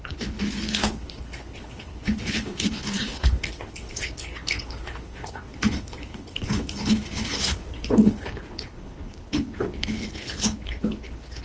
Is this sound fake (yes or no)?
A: yes